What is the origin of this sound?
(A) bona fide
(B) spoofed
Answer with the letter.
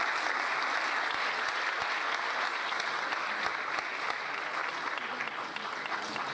A